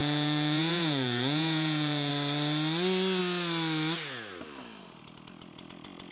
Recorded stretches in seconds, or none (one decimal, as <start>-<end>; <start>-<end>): 2.1-6.1